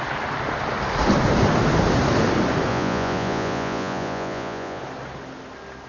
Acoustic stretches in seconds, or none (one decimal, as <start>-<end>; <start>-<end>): 0.0-2.7; 4.8-5.9